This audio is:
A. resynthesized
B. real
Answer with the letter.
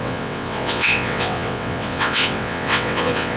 A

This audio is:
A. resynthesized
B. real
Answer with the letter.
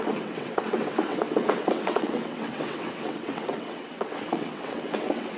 A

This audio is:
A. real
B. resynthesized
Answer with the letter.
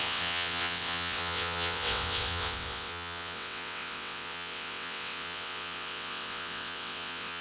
B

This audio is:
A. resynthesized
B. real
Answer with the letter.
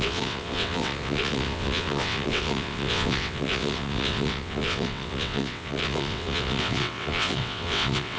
A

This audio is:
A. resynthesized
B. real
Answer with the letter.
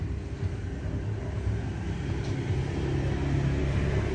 B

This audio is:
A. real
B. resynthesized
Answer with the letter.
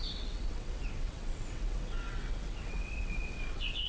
B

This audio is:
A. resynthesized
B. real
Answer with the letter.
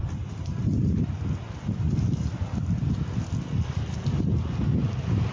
B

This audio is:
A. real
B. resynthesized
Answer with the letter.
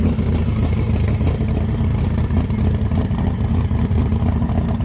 A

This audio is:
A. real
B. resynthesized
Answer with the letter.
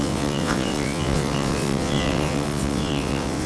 B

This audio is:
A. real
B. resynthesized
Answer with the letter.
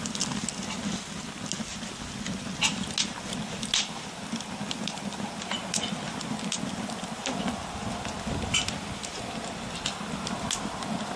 A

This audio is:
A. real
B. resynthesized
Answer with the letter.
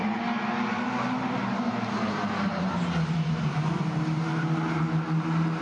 A